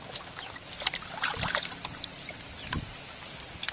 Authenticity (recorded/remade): recorded